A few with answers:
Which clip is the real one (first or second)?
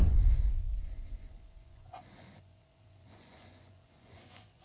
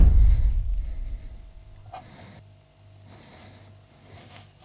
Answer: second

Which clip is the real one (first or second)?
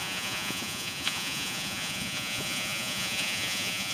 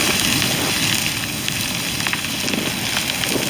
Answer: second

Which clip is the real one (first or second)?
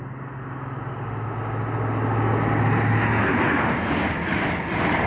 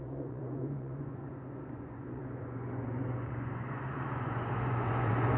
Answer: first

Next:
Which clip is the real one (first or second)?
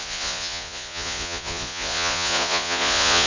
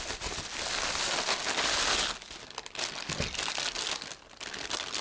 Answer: second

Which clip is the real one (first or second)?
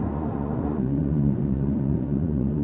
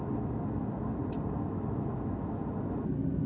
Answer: second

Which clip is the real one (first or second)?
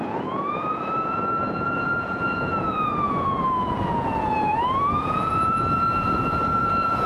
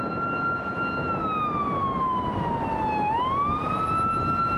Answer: second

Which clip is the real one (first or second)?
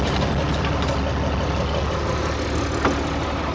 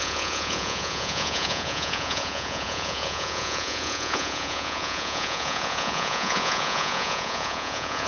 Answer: first